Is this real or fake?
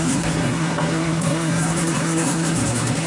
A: fake